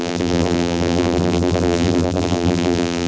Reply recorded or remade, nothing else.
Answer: remade